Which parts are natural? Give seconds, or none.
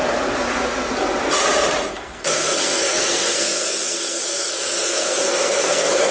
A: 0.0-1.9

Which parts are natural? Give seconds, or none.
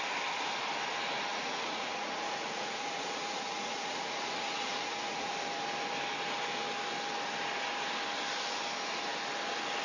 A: 0.0-1.3; 5.3-9.8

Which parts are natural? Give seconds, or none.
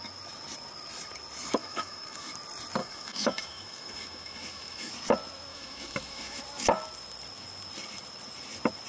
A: 0.0-1.6; 2.3-2.8; 4.9-5.5; 6.4-8.9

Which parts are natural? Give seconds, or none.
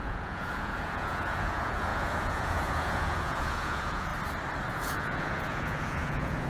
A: 4.1-4.7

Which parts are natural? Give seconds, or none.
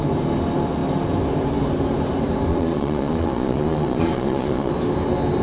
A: 0.0-2.5; 4.7-5.4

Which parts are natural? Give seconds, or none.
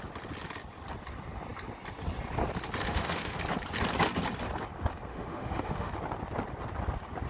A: 0.0-2.8; 3.4-5.1; 5.9-7.3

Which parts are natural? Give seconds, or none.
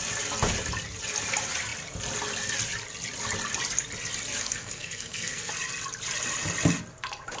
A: 0.0-4.4; 5.5-7.4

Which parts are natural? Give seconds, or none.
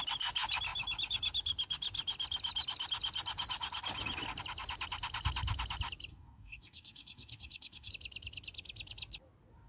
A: 0.0-6.1; 7.9-9.7